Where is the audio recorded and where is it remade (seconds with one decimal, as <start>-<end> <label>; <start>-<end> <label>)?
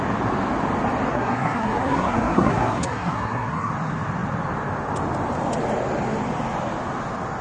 0.0-1.1 recorded; 1.1-3.7 remade; 3.7-7.4 recorded